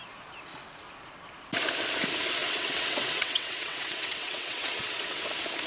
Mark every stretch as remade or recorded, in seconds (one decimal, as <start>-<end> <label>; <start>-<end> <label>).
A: 0.0-2.4 recorded; 2.4-5.2 remade; 5.2-5.7 recorded